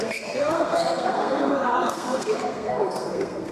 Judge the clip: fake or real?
fake